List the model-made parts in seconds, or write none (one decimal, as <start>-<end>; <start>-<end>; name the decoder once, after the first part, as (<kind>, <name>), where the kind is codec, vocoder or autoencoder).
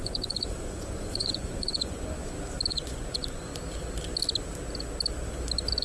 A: 0.0-2.2 (vocoder, Vocos); 2.7-3.5